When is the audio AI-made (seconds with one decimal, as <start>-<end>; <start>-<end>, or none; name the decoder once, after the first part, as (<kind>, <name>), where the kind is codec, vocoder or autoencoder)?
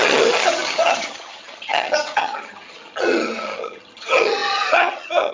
0.0-5.3 (vocoder, HiFi-GAN)